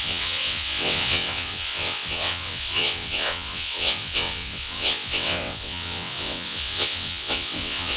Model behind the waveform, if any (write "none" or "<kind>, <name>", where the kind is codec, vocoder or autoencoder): vocoder, WaveNeXt